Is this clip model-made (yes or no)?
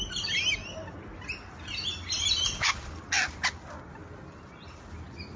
no